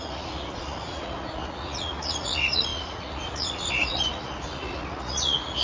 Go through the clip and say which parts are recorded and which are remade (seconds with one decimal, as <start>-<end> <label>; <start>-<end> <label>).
0.0-5.6 remade